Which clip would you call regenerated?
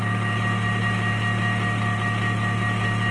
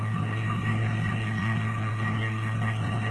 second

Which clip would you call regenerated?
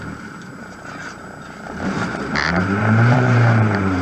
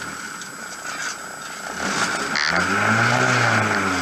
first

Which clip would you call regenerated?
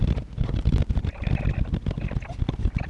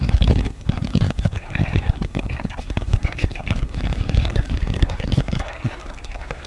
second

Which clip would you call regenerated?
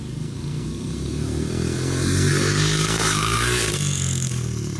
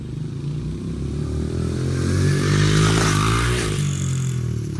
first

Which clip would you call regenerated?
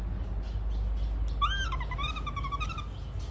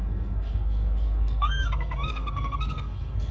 second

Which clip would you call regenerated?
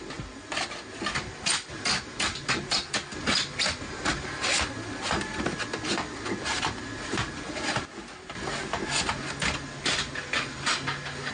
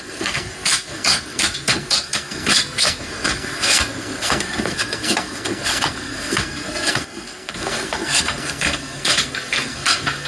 second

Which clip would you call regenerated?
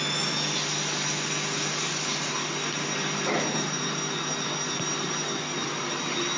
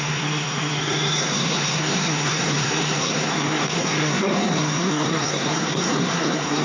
second